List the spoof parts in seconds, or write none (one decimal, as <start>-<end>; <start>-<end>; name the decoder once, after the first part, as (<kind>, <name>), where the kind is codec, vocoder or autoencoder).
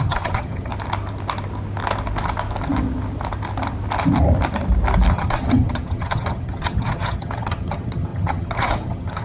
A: 0.0-0.7 (vocoder, HiFi-GAN); 5.1-9.2